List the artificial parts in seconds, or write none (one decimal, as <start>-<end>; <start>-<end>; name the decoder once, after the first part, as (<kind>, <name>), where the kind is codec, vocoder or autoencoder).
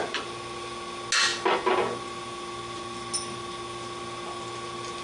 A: none